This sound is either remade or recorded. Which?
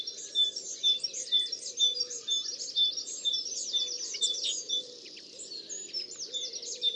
recorded